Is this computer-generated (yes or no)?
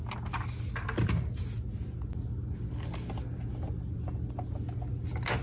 no